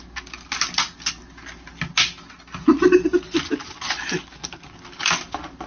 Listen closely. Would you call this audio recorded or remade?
recorded